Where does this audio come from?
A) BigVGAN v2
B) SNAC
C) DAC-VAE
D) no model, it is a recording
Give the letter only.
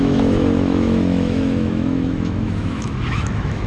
C